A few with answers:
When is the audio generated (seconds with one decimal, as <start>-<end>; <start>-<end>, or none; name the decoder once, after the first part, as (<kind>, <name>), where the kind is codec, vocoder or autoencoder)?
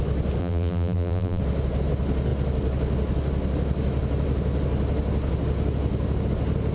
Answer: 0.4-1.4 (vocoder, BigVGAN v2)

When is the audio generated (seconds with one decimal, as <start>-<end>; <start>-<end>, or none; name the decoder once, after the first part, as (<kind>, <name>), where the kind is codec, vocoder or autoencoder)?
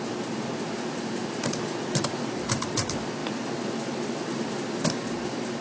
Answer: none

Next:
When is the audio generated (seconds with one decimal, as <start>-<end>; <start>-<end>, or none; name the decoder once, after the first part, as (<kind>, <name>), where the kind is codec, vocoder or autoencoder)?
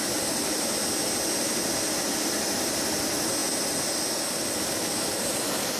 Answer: none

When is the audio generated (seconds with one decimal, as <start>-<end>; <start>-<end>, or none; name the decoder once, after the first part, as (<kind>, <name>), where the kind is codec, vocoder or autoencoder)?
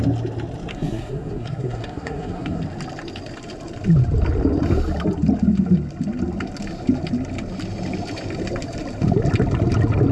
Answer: 0.7-2.6 (codec, SNAC)